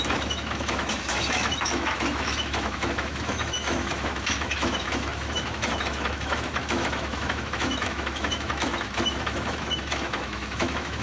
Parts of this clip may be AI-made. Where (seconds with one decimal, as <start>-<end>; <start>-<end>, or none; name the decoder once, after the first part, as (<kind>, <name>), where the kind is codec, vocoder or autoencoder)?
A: 0.0-11.0 (autoencoder, DAC-VAE)